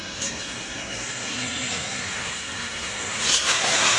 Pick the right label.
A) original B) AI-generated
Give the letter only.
B